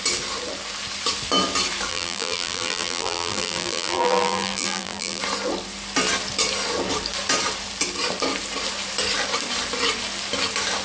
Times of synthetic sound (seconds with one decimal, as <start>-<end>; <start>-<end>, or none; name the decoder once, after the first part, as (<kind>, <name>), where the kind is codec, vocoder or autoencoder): 1.9-5.2 (vocoder, BigVGAN v2)